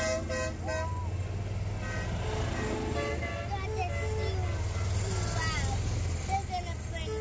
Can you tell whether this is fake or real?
real